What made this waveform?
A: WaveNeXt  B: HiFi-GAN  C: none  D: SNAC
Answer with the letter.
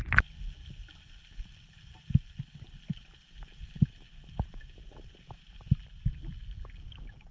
C